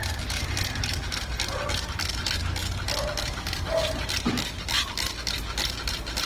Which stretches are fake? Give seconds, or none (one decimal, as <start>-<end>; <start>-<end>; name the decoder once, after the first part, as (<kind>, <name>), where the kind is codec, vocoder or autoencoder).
none